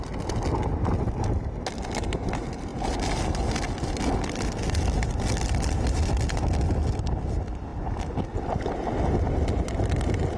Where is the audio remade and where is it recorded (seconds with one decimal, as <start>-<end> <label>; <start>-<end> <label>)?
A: 0.0-10.4 recorded